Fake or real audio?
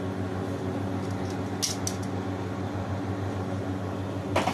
real